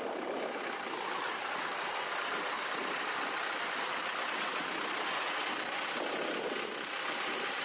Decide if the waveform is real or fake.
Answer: fake